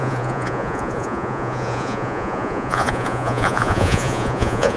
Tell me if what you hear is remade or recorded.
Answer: remade